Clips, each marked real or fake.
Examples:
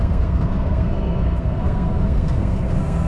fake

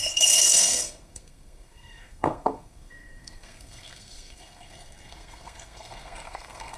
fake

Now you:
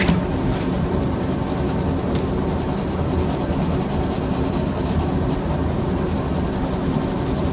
real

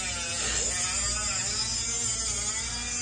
real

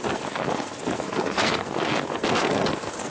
fake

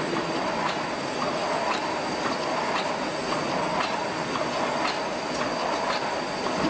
real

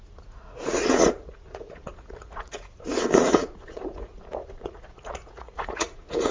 fake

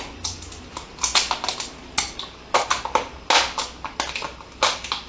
real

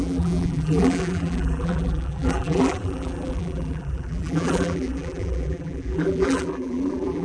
fake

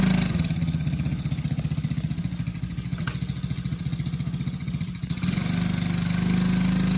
real